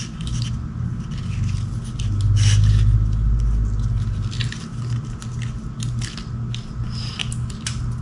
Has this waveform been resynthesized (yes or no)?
no